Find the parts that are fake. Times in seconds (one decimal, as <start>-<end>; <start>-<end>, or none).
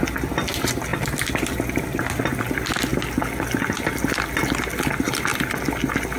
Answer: 0.9-2.0